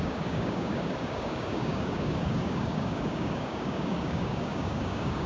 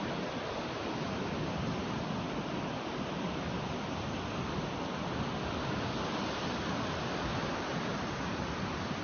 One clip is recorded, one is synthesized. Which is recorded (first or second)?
second